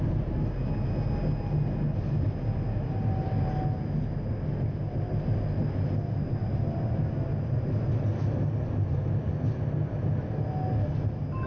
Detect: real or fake real